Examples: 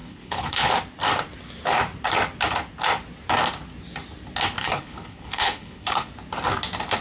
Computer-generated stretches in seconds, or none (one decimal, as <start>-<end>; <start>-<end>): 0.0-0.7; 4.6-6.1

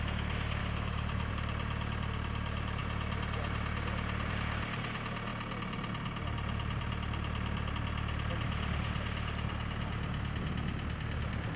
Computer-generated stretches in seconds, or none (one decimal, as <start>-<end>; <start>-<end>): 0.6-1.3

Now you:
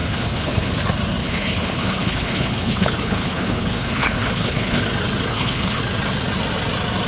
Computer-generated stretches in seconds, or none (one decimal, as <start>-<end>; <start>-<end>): 0.0-0.7; 1.2-4.8; 5.3-5.8

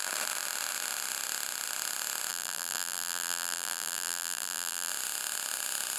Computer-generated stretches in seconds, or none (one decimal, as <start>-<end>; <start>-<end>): 2.3-4.9

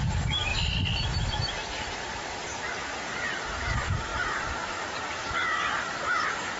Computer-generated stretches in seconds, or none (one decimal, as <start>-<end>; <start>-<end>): none